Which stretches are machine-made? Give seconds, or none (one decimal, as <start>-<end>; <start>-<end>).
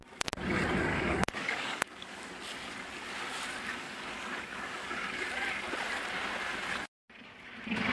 0.9-2.4; 3.7-5.2